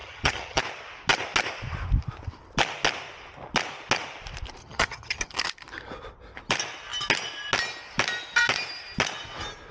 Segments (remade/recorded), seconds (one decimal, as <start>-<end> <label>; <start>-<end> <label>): 0.0-0.6 remade; 0.6-4.6 recorded; 4.6-5.3 remade; 5.3-9.7 recorded